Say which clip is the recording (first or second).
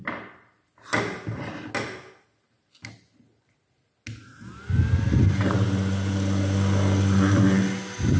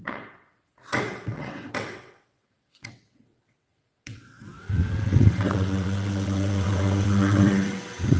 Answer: first